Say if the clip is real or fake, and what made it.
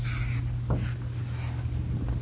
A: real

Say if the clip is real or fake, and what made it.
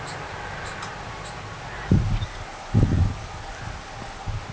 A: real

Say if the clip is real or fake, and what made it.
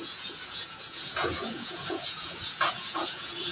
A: fake, vocoder, Vocos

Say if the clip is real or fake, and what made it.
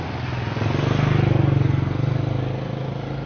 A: real